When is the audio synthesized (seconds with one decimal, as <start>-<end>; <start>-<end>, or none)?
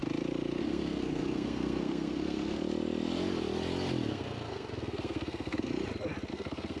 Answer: 0.6-2.6; 4.1-5.7; 6.3-6.8